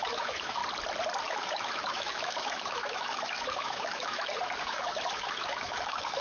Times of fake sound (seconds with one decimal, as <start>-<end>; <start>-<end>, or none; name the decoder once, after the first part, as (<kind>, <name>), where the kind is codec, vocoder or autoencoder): 0.0-0.6 (autoencoder, DAC-VAE); 1.2-6.2